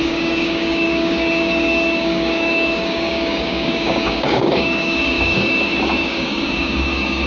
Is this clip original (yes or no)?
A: no